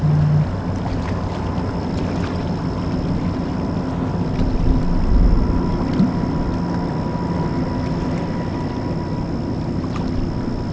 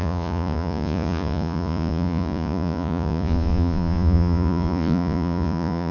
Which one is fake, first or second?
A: second